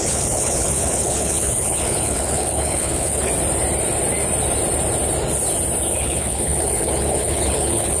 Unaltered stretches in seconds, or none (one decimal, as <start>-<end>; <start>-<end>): 3.3-5.9